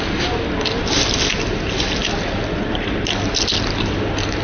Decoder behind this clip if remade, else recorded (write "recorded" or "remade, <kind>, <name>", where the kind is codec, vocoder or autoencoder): recorded